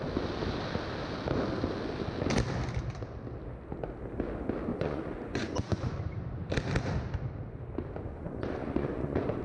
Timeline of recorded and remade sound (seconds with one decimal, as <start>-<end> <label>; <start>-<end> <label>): 0.0-4.7 recorded; 4.7-6.0 remade; 6.0-8.1 recorded; 8.1-9.4 remade

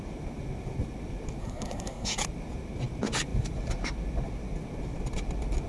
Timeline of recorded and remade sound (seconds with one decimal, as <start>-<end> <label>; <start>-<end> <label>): 0.0-1.4 recorded; 1.4-2.2 remade; 2.2-5.7 recorded

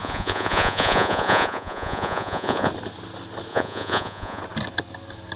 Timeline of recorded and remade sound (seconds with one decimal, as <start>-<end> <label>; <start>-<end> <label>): 0.0-2.7 remade; 2.7-3.5 recorded; 3.5-4.4 remade; 4.4-5.4 recorded